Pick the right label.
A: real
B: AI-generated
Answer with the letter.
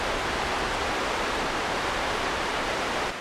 B